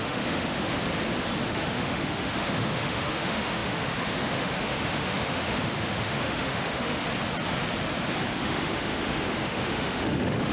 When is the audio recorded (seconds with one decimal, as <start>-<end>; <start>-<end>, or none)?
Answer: 0.8-1.5; 7.0-8.4